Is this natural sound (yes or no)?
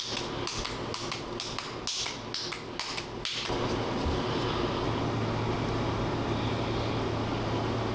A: yes